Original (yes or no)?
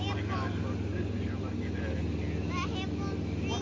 yes